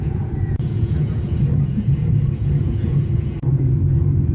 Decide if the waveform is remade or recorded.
remade